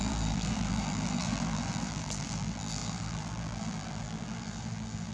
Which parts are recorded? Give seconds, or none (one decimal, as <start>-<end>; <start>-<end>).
none